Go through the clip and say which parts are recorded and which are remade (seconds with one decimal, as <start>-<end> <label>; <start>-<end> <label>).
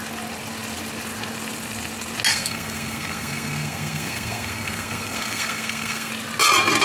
0.0-2.3 recorded; 2.3-6.1 remade; 6.1-6.8 recorded